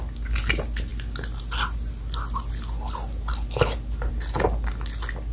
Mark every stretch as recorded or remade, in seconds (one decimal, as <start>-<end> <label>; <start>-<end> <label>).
0.0-5.3 recorded